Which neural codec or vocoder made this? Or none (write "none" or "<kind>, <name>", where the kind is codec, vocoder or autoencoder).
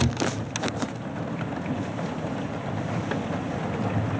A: none